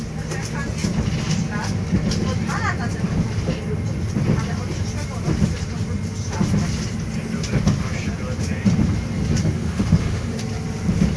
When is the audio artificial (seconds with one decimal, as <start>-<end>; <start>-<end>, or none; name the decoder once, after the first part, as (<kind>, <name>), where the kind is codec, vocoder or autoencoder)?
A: 9.4-10.4 (autoencoder, DAC-VAE)